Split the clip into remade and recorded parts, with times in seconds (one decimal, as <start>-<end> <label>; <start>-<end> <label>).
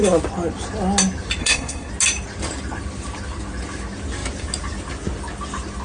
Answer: 0.0-1.4 recorded; 1.4-1.9 remade; 1.9-5.8 recorded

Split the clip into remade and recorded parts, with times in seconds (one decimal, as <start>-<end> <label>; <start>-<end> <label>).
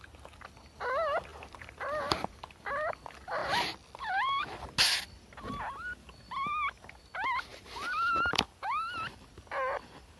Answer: 0.0-1.3 recorded; 1.3-2.5 remade; 2.5-3.4 recorded; 3.4-4.4 remade; 4.4-7.5 recorded; 7.5-9.3 remade; 9.3-10.2 recorded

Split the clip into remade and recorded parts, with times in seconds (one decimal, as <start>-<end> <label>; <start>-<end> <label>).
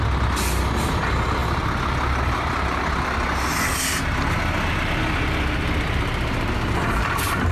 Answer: 0.0-7.5 recorded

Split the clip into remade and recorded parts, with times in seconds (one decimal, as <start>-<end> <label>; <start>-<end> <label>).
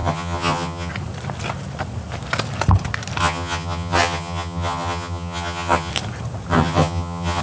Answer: 0.0-0.9 remade; 0.9-3.2 recorded; 3.2-5.9 remade; 5.9-6.5 recorded; 6.5-7.4 remade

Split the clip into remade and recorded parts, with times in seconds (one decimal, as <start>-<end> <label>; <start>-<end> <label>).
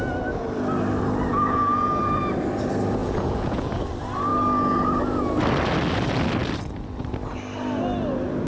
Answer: 0.0-1.3 recorded; 1.3-2.0 remade; 2.0-3.0 recorded; 3.0-3.8 remade; 3.8-8.5 recorded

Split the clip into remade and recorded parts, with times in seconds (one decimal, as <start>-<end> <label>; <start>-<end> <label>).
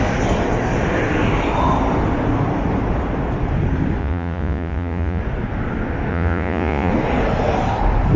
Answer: 0.0-4.0 recorded; 4.0-5.2 remade; 5.2-6.1 recorded; 6.1-6.9 remade; 6.9-8.2 recorded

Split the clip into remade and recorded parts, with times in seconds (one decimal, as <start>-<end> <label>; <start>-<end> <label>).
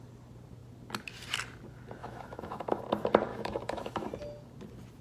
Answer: 0.0-2.0 recorded; 2.0-2.8 remade; 2.8-3.3 recorded; 3.3-4.1 remade; 4.1-5.0 recorded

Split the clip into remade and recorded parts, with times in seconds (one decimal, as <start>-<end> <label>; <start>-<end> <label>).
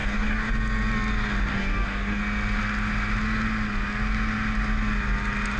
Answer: 0.0-0.5 remade; 0.5-1.5 recorded; 1.5-2.2 remade; 2.2-5.6 recorded